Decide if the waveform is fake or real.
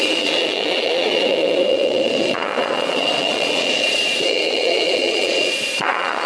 fake